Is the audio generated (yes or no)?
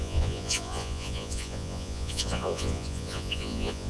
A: yes